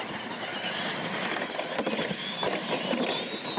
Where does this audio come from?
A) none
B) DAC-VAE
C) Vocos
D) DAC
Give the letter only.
A